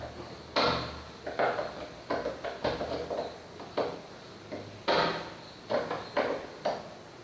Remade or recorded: recorded